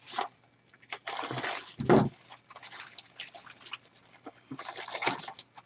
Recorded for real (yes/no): yes